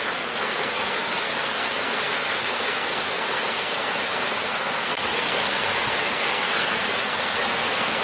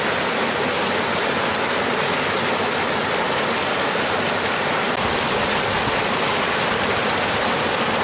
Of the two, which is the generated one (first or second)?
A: first